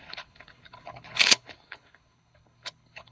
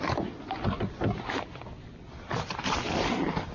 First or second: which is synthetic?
first